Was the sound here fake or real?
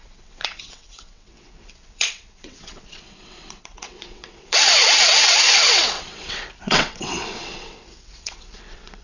fake